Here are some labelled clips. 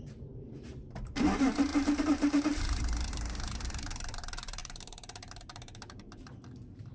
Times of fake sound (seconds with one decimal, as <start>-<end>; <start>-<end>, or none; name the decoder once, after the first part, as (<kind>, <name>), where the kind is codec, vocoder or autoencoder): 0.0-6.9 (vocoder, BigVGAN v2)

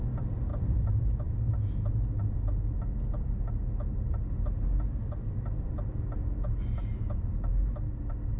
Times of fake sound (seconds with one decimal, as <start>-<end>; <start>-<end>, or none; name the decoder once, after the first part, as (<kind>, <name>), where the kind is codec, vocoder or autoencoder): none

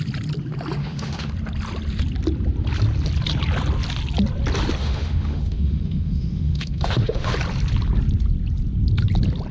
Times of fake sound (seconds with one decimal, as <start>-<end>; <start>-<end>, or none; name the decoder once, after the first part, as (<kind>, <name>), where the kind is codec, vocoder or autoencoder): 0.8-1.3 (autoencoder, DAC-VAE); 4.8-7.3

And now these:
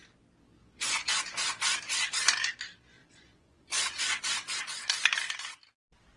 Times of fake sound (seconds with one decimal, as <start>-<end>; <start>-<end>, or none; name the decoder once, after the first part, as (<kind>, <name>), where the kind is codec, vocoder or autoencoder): 0.6-1.2 (vocoder, Vocos); 3.0-4.6

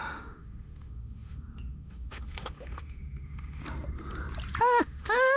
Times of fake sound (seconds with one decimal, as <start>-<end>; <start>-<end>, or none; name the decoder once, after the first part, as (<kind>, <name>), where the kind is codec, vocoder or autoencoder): 0.0-3.6 (autoencoder, DAC-VAE); 4.6-5.4

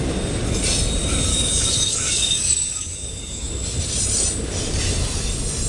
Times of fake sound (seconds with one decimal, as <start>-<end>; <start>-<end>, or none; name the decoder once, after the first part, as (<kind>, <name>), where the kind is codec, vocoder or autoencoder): 1.3-3.5 (codec, DAC)

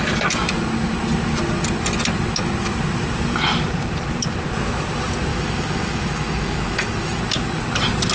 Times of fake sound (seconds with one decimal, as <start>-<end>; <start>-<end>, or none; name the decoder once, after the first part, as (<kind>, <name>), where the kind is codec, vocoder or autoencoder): 5.3-7.2 (autoencoder, DAC-VAE)